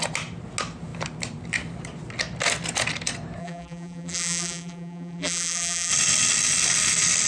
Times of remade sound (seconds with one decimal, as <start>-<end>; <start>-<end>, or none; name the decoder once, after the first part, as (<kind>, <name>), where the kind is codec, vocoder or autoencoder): 3.4-5.9 (vocoder, BigVGAN v2)

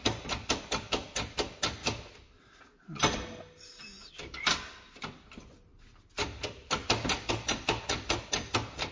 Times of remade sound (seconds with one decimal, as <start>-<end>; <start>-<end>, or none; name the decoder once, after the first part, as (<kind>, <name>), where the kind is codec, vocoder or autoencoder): none

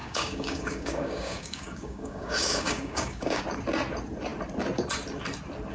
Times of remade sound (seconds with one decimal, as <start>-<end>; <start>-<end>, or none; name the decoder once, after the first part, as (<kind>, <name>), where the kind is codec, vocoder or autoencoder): 0.0-3.4 (codec, DAC)